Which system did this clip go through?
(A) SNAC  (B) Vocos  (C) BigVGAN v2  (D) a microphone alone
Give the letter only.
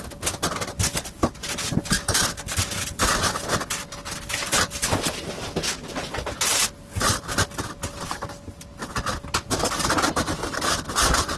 D